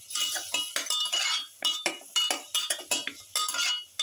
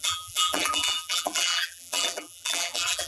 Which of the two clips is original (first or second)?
first